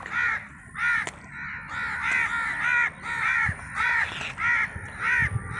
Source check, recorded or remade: recorded